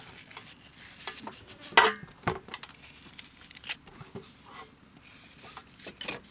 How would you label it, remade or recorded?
recorded